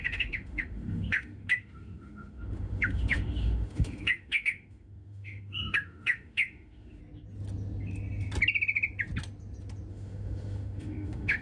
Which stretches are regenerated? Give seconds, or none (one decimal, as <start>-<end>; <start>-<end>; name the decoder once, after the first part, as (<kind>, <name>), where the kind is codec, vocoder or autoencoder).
0.0-7.0 (autoencoder, DAC-VAE); 9.9-11.4